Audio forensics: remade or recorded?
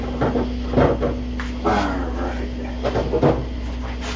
recorded